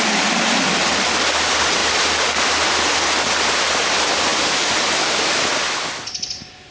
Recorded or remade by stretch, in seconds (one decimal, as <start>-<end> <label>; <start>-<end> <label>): 0.0-6.7 recorded